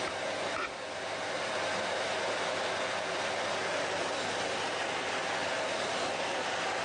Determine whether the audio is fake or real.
real